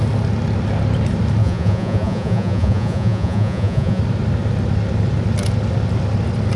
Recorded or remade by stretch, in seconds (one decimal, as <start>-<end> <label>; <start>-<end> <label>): 0.0-1.4 recorded; 1.4-4.0 remade; 4.0-6.6 recorded